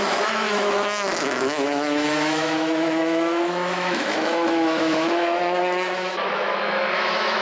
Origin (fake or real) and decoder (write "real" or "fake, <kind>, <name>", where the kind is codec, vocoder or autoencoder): fake, autoencoder, DAC-VAE